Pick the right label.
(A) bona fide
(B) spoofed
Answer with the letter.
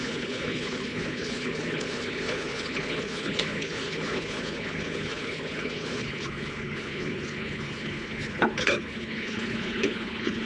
B